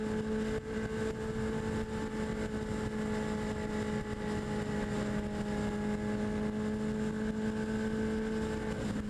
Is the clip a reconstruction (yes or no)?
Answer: no